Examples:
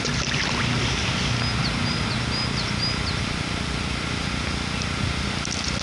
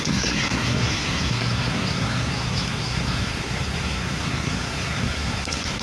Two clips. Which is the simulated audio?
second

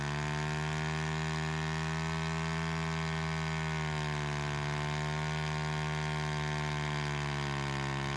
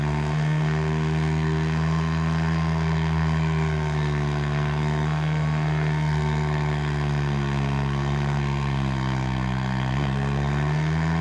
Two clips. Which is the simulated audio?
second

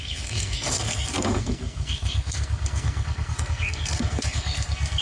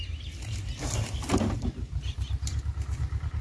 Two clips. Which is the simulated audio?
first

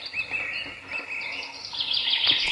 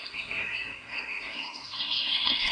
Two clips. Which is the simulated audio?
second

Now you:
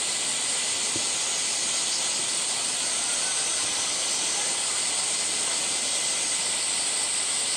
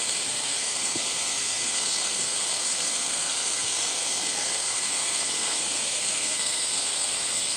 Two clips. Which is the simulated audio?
second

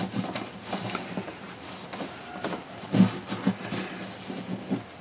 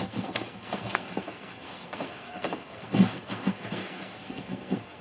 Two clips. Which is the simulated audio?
second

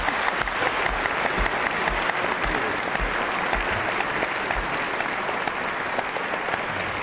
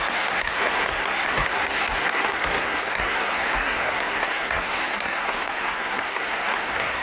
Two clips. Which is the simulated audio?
second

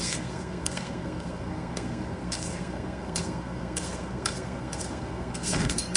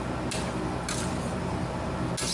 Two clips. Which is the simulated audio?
first